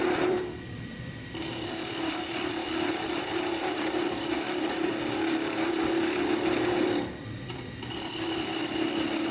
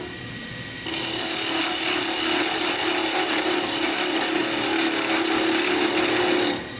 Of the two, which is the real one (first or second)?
second